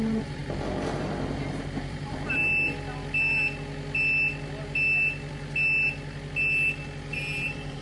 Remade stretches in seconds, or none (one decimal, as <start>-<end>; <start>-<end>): 0.0-2.4; 7.1-7.8